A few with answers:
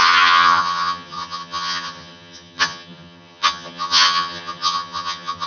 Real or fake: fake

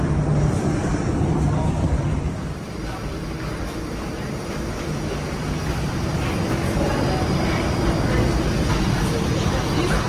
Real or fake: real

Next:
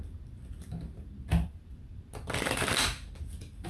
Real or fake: real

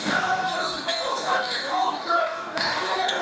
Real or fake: fake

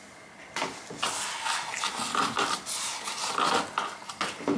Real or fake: real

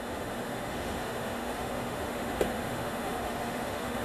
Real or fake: fake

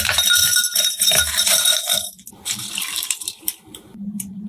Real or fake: fake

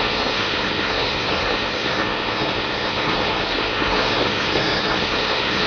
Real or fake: fake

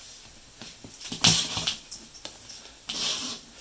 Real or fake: real